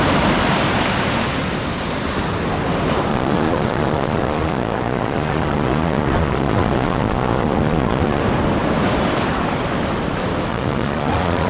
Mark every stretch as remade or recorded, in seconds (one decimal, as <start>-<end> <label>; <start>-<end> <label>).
0.0-3.1 recorded; 3.1-8.2 remade; 8.2-10.5 recorded; 10.5-11.5 remade

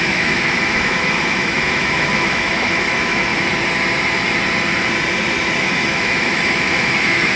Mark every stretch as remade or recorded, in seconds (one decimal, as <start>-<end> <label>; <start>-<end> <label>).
0.0-3.3 remade; 3.3-5.6 recorded; 5.6-7.4 remade

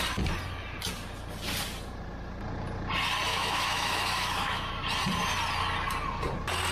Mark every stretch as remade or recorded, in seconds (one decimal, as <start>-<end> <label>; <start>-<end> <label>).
0.0-3.3 recorded; 3.3-4.7 remade; 4.7-6.7 recorded

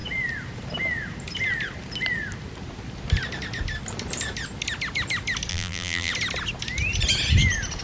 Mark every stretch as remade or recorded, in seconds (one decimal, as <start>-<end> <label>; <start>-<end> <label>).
0.0-5.5 recorded; 5.5-6.1 remade; 6.1-7.8 recorded

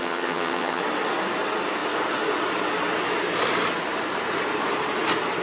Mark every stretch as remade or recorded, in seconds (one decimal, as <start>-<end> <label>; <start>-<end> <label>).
0.0-0.8 remade; 0.8-5.4 recorded